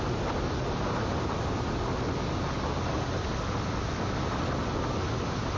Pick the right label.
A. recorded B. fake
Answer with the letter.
A